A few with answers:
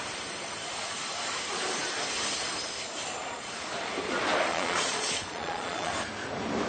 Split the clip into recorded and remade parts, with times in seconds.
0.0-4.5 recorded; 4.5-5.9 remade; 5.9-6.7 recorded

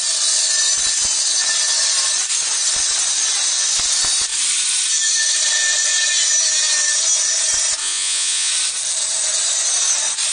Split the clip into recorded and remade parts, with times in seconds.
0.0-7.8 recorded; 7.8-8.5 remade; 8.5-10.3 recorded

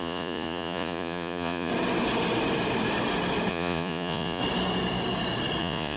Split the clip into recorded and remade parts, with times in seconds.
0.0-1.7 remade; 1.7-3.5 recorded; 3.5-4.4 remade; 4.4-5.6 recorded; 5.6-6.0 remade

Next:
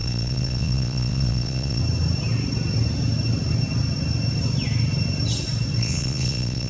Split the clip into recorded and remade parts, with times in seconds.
0.0-1.8 remade; 1.8-5.8 recorded; 5.8-6.7 remade